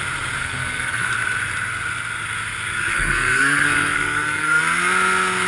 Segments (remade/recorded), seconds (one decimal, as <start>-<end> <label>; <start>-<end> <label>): 0.0-0.4 recorded; 0.4-1.1 remade; 1.1-2.9 recorded; 2.9-4.6 remade; 4.6-5.5 recorded